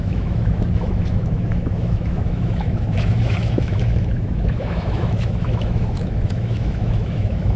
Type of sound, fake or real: fake